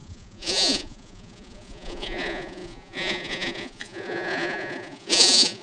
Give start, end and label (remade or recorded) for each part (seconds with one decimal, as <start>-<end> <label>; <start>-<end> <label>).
0.0-5.6 remade